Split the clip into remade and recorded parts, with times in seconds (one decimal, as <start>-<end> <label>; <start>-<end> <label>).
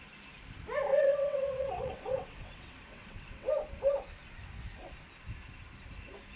0.0-0.9 recorded; 0.9-3.5 remade; 3.5-6.4 recorded